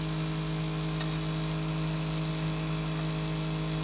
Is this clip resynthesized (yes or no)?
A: no